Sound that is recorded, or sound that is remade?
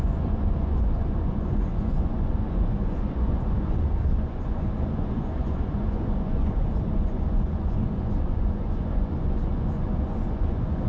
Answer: remade